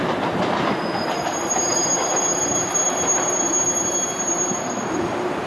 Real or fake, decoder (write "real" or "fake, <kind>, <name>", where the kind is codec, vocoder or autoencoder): fake, vocoder, BigVGAN v2